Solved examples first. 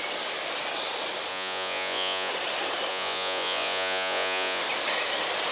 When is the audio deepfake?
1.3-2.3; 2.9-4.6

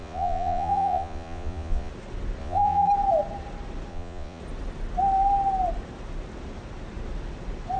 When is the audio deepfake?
0.0-1.9; 2.4-2.9; 3.9-4.4

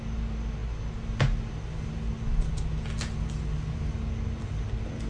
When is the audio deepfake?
none

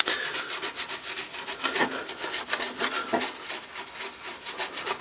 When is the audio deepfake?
none

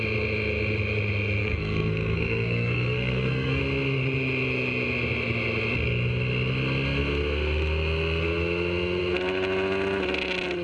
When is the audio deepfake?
1.4-3.6

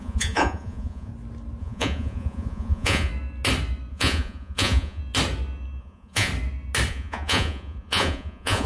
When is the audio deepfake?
0.0-1.1; 1.6-3.1; 3.9-5.0; 5.8-6.3; 6.9-8.7

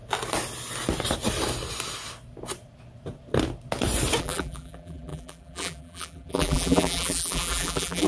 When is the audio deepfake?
4.2-8.1

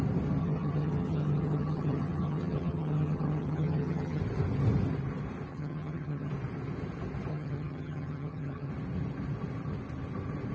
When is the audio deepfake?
0.4-4.2; 5.5-6.3; 7.3-8.7